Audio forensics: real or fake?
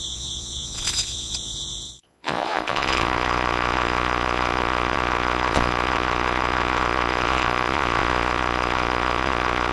fake